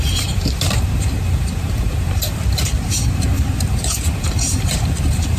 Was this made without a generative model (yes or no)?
no